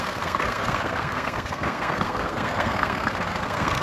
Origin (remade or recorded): remade